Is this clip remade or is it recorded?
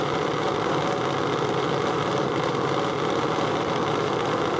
remade